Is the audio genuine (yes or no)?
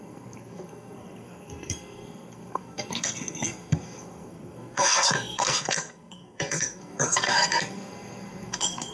no